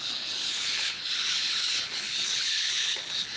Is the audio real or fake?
fake